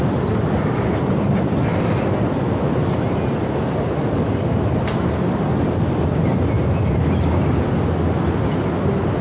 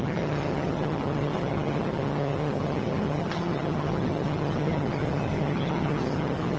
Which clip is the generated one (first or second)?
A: second